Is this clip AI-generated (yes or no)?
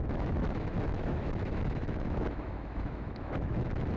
yes